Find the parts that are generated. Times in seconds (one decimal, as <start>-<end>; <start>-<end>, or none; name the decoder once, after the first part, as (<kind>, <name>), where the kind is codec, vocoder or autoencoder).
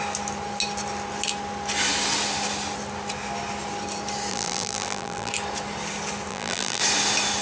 4.3-5.3 (vocoder, BigVGAN v2); 6.3-6.8